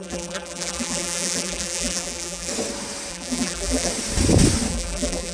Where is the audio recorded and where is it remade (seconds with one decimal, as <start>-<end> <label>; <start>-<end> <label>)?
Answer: 0.0-2.5 remade; 2.5-3.1 recorded; 3.1-3.9 remade; 3.9-4.7 recorded; 4.7-5.3 remade